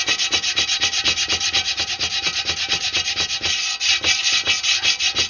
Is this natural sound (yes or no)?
yes